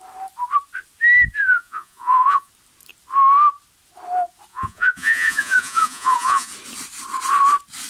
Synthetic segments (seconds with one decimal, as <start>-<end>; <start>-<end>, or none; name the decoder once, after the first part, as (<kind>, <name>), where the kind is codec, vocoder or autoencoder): 1.4-2.5 (vocoder, Vocos); 4.5-6.5